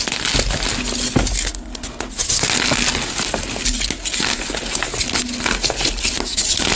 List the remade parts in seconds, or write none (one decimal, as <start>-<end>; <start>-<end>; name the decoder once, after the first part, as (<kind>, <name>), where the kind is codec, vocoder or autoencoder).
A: none